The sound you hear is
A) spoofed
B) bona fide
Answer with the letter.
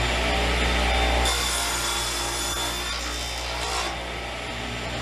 B